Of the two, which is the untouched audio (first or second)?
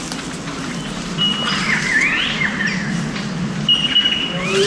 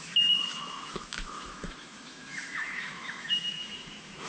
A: first